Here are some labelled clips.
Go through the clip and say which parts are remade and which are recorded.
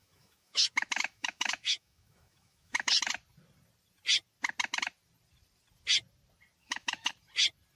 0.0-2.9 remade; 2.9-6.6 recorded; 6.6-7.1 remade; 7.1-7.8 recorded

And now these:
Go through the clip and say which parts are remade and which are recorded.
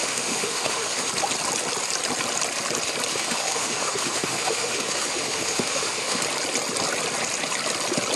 0.0-1.1 remade; 1.1-3.1 recorded; 3.1-6.2 remade; 6.2-8.2 recorded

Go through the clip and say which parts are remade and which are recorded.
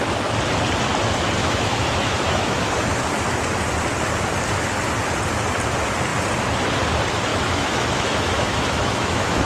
0.0-1.4 recorded; 1.4-3.1 remade; 3.1-7.3 recorded; 7.3-9.5 remade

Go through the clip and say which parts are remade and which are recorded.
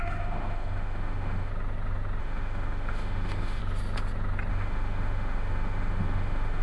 0.0-1.5 remade; 1.5-2.2 recorded; 2.2-3.6 remade; 3.6-4.5 recorded; 4.5-6.6 remade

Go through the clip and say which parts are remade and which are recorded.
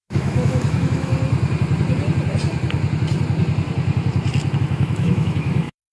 0.0-1.1 remade; 1.1-4.6 recorded; 4.6-5.9 remade